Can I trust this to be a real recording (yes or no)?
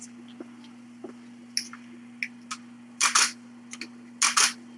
yes